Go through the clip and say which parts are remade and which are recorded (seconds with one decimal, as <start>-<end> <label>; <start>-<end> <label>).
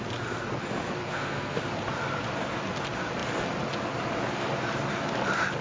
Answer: 0.0-1.0 recorded; 1.0-1.6 remade; 1.6-5.6 recorded